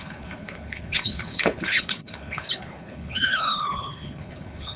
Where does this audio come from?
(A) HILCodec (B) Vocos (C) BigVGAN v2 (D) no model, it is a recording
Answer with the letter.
A